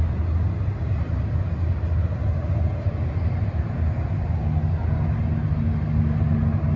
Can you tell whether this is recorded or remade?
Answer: recorded